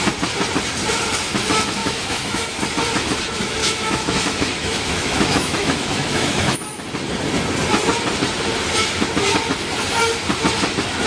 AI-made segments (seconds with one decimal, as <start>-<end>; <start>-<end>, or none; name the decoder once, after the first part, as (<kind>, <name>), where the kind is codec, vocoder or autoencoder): 1.8-2.6 (autoencoder, DAC-VAE); 3.6-6.6